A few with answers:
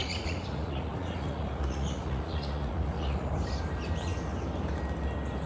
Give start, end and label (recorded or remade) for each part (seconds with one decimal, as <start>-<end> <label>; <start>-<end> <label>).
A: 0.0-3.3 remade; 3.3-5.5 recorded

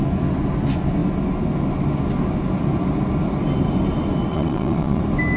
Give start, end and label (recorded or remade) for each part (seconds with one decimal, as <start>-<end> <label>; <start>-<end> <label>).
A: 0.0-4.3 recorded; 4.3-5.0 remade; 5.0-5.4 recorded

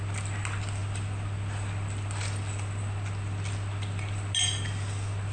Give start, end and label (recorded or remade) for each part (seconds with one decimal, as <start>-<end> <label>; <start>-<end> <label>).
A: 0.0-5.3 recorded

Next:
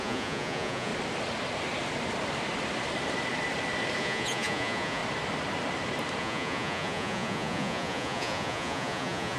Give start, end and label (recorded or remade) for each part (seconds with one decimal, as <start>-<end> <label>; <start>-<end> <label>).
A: 0.0-0.9 remade; 0.9-4.0 recorded; 4.0-5.0 remade; 5.0-6.2 recorded; 6.2-9.4 remade